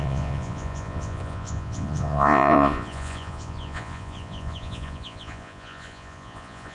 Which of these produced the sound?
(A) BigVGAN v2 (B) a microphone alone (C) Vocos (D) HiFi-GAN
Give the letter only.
C